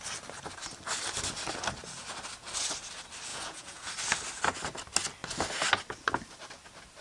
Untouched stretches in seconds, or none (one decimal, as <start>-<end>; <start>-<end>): 0.0-3.3; 3.9-7.0